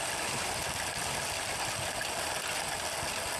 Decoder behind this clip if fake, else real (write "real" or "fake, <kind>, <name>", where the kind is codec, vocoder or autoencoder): real